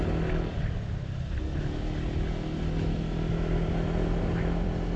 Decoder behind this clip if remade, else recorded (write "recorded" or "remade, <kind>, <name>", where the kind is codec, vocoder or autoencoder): recorded